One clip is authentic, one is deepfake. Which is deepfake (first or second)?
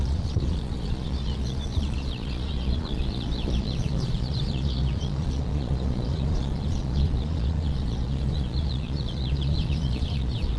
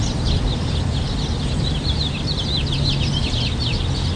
first